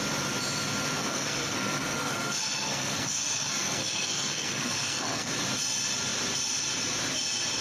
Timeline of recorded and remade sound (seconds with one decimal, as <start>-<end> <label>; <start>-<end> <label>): 0.0-1.0 recorded; 1.0-5.3 remade; 5.3-7.6 recorded